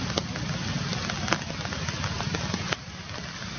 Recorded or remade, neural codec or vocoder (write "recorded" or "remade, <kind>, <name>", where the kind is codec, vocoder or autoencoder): recorded